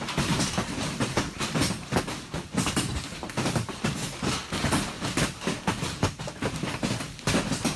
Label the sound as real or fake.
real